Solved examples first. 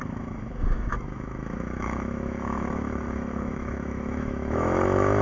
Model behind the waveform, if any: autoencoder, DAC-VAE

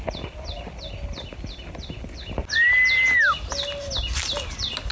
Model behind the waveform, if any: none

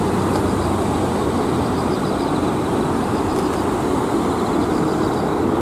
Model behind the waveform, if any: none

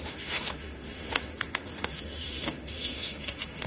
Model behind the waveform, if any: autoencoder, DAC-VAE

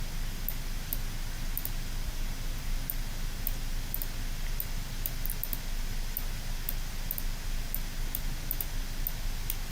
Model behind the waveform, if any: none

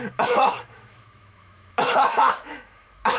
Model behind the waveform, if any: autoencoder, DAC-VAE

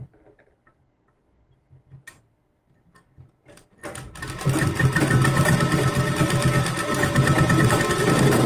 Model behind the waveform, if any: none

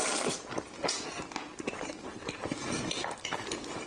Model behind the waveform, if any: none